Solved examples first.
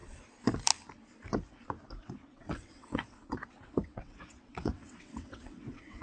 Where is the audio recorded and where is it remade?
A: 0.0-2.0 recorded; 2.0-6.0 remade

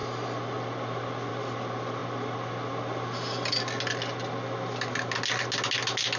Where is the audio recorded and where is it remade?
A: 0.0-6.2 recorded

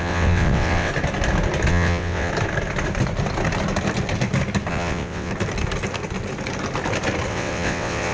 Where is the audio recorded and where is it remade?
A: 0.0-0.9 remade; 0.9-1.7 recorded; 1.7-2.3 remade; 2.3-4.7 recorded; 4.7-5.3 remade; 5.3-7.3 recorded; 7.3-8.1 remade

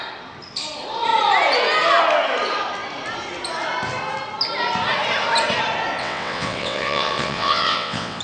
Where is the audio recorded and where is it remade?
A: 0.0-6.0 recorded; 6.0-8.2 remade